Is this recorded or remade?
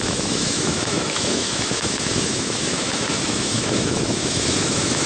remade